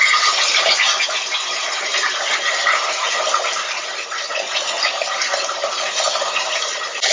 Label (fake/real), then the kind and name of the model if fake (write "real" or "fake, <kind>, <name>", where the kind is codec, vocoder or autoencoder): real